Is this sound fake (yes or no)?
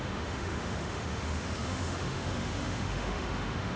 yes